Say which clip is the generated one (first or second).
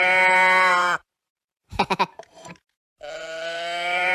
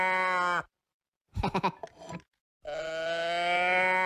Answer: first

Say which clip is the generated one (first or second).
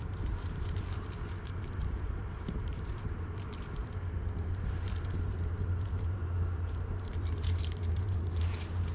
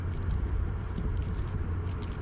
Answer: first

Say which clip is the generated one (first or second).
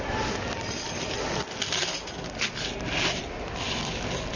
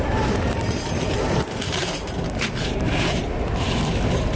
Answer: second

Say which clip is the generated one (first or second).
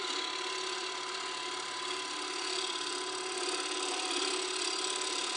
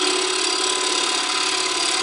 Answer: first